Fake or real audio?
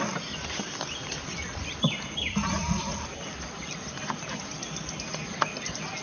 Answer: real